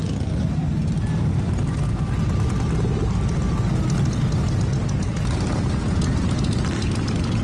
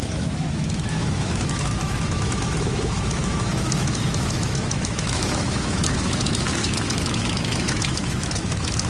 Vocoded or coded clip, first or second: second